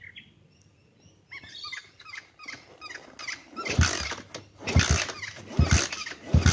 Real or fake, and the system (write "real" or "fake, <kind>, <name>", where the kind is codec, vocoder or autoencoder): real